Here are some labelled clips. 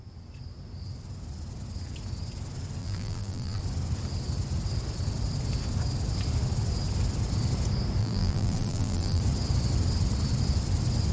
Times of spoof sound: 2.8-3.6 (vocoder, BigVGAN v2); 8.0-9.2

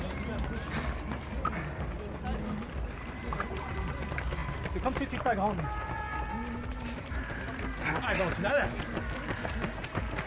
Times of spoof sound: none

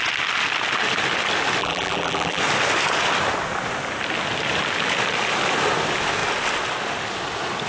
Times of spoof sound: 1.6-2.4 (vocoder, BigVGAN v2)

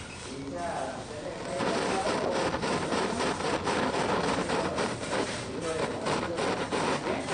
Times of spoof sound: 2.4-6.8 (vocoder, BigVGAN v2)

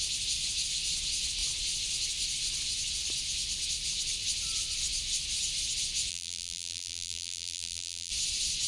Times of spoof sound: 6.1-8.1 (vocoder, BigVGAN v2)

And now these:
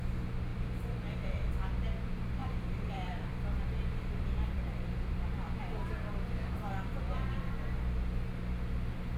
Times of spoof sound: 0.5-1.5 (vocoder, BigVGAN v2); 2.4-7.5

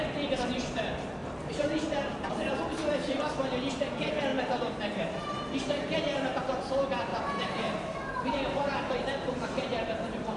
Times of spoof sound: 1.2-2.3 (vocoder, BigVGAN v2); 4.3-5.0; 7.1-10.4

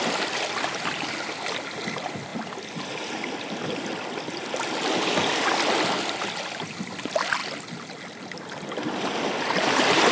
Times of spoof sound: none